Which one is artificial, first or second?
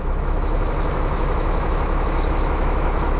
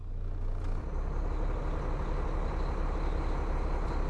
first